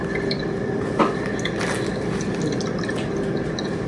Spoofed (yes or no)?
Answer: no